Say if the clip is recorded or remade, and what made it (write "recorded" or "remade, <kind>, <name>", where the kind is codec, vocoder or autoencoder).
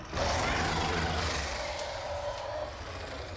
recorded